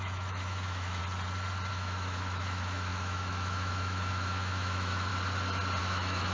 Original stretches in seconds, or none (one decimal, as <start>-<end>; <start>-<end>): 1.0-1.7; 5.1-5.8